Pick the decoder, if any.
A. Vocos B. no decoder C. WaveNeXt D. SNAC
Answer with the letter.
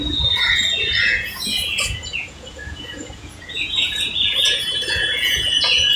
A